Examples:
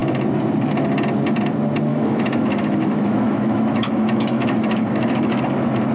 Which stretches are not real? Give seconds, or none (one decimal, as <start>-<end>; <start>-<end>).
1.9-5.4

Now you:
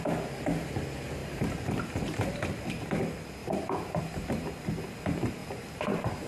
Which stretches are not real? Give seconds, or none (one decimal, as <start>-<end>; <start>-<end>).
1.2-2.4; 3.4-4.0; 5.4-6.3

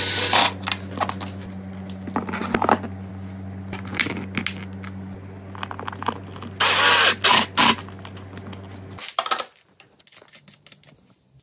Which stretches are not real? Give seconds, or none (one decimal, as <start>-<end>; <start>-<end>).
none

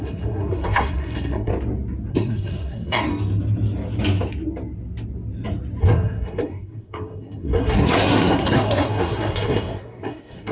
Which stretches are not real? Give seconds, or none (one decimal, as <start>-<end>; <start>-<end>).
0.0-1.5; 2.1-3.1; 5.8-10.5